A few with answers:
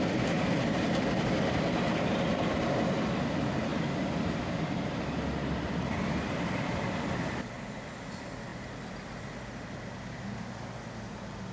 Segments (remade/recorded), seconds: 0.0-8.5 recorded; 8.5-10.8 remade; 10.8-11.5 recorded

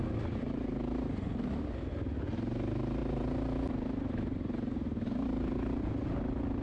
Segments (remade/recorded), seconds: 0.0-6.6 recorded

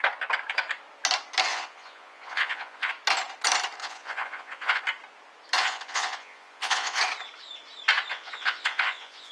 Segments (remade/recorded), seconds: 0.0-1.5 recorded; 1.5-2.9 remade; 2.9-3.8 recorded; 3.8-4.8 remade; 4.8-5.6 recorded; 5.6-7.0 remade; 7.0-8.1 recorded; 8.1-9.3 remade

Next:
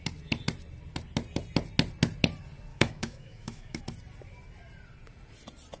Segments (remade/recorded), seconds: 0.0-2.7 recorded; 2.7-3.8 remade; 3.8-5.8 recorded

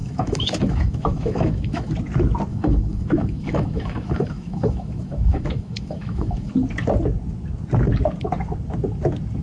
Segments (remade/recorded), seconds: 0.0-1.9 remade; 1.9-2.5 recorded; 2.5-6.5 remade; 6.5-9.4 recorded